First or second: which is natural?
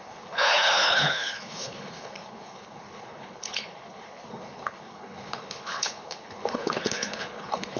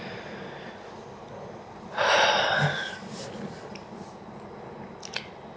second